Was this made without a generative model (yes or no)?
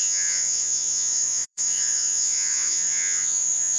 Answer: no